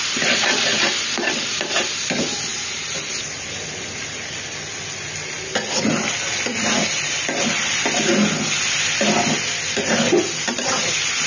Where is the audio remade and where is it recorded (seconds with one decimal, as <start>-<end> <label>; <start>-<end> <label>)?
0.0-0.7 recorded; 0.7-1.7 remade; 1.7-2.5 recorded; 2.5-6.2 remade; 6.2-11.3 recorded